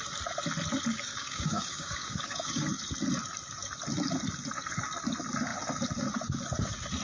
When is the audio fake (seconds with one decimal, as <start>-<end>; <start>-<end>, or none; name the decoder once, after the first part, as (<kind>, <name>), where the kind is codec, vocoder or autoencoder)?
0.9-2.8 (codec, DAC)